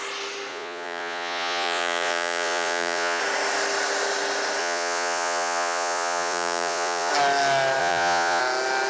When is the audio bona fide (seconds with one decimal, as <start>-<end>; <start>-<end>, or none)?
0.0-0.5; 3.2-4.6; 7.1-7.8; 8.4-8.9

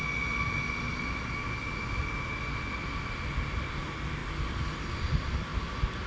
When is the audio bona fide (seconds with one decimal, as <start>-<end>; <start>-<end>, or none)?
0.0-4.2; 4.9-5.5

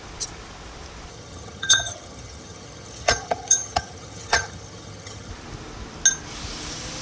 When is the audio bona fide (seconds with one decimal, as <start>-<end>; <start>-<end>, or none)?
0.0-1.1; 5.3-7.0

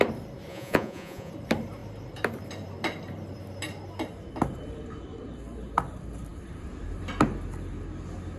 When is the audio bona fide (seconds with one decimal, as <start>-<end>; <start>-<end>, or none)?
0.0-0.5; 1.3-8.4

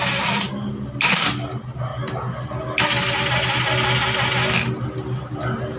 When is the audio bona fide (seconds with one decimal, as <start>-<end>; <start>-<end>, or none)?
0.0-5.8

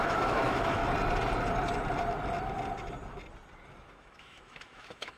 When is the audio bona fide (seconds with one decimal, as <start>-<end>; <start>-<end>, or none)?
0.8-3.9

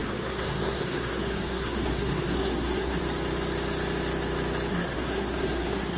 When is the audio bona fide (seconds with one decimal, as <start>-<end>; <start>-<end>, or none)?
3.0-4.7